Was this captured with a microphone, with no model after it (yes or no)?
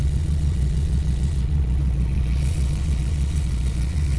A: no